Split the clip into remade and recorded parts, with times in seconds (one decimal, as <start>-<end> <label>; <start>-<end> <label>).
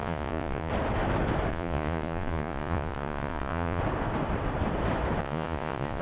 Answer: 0.0-0.7 remade; 0.7-1.5 recorded; 1.5-3.8 remade; 3.8-5.2 recorded; 5.2-6.0 remade